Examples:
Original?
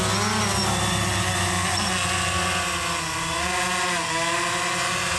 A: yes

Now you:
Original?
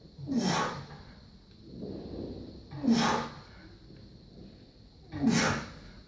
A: yes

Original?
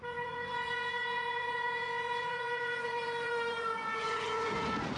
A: no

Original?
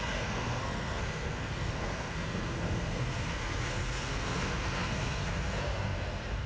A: no